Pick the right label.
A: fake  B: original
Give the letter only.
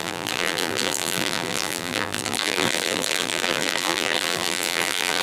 A